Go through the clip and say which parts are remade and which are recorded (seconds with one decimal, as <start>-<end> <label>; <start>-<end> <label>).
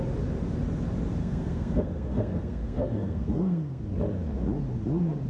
0.0-1.2 recorded; 1.2-3.8 remade; 3.8-5.3 recorded